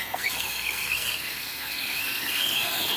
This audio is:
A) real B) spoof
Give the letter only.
B